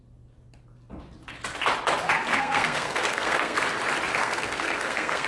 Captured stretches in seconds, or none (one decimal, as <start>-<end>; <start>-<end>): 0.0-2.3; 3.6-4.2